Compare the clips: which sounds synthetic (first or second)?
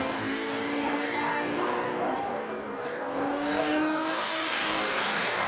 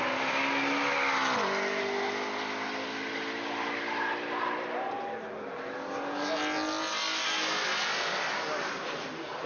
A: first